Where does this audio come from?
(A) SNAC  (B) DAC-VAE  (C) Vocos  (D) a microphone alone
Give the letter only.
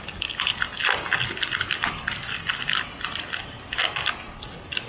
D